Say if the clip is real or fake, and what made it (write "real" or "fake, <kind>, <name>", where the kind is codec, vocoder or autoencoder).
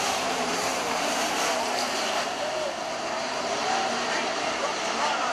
fake, vocoder, BigVGAN v2